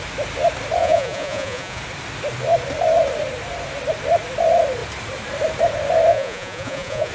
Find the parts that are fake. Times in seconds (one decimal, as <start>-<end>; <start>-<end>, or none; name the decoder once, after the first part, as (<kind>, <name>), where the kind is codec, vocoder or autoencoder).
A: 0.8-1.8 (vocoder, Vocos); 6.1-7.1